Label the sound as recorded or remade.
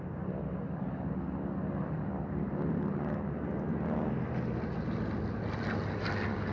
recorded